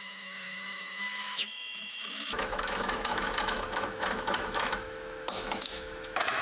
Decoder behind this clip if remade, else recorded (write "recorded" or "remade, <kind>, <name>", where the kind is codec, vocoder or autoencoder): remade, autoencoder, DAC-VAE